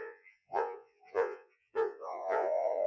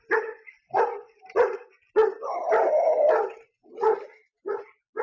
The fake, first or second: first